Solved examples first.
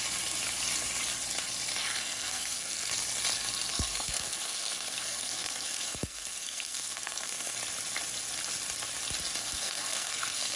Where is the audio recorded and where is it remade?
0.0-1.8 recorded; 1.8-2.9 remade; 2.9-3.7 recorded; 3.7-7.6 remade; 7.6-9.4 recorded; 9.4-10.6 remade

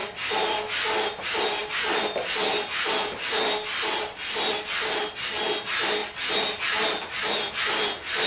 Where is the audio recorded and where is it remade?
0.0-8.3 recorded

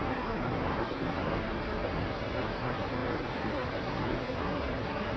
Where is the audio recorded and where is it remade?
0.0-5.2 remade

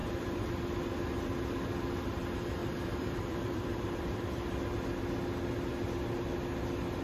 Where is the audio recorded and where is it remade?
0.0-0.6 remade; 0.6-2.6 recorded; 2.6-4.7 remade; 4.7-7.0 recorded

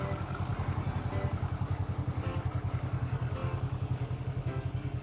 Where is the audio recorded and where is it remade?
0.0-0.5 remade; 0.5-1.3 recorded; 1.3-5.0 remade